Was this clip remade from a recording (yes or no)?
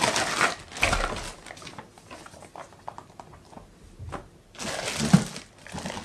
no